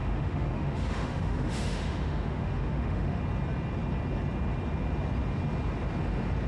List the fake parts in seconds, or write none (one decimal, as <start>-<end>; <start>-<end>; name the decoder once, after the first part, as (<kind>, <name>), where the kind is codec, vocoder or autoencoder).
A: 0.0-3.2 (autoencoder, DAC-VAE)